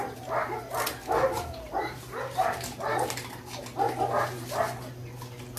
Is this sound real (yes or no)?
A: yes